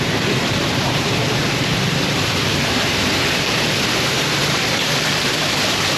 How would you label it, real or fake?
fake